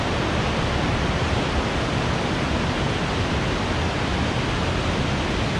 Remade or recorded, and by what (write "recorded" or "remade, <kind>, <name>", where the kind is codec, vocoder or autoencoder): recorded